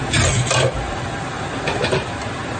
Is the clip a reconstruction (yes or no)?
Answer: no